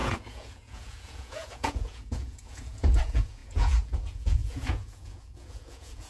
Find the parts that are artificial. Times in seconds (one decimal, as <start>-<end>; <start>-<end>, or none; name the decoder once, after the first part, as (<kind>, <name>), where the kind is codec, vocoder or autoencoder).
0.0-6.1 (vocoder, Vocos)